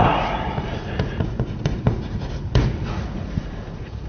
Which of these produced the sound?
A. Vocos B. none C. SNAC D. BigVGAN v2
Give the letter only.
A